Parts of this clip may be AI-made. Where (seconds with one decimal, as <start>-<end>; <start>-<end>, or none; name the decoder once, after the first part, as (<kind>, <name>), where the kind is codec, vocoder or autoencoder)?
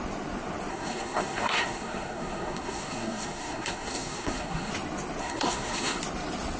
0.7-4.7 (codec, SNAC); 5.2-6.0